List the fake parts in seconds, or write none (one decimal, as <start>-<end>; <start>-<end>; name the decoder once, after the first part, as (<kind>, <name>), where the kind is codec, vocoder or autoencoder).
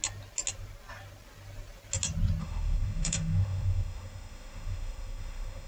2.4-5.7 (autoencoder, DAC-VAE)